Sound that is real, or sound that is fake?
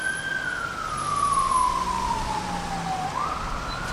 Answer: real